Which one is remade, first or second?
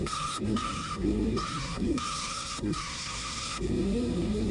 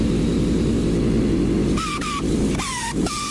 first